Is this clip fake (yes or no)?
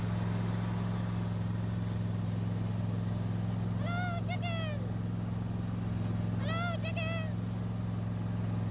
no